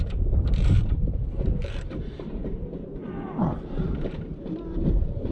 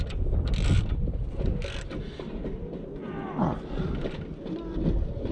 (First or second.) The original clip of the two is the second